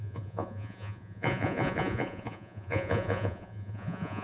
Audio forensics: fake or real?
fake